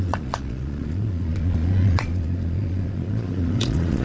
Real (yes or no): no